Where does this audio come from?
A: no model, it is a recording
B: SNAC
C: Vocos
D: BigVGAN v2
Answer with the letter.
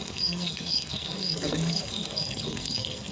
B